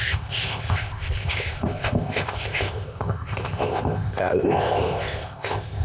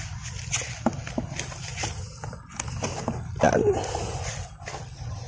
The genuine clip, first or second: second